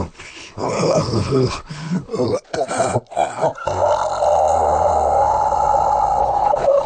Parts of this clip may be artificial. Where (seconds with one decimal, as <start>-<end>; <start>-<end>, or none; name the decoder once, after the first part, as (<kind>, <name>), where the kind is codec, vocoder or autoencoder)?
0.0-2.1 (codec, HILCodec); 6.2-6.9